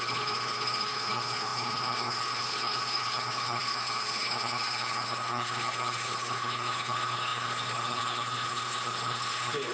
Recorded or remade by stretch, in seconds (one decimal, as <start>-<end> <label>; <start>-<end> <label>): 0.0-9.7 remade